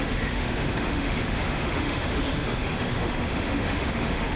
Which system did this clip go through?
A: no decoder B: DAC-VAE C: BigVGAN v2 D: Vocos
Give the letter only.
B